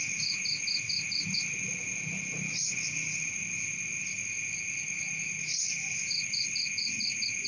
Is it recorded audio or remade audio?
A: recorded